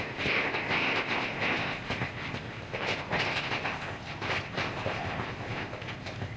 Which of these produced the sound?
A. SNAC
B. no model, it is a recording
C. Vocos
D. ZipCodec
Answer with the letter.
D